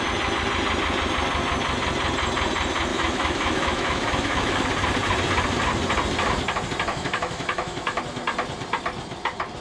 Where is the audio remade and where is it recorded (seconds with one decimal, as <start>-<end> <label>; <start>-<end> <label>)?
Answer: 0.0-2.9 recorded; 2.9-4.6 remade; 4.6-6.9 recorded; 6.9-8.0 remade; 8.0-9.6 recorded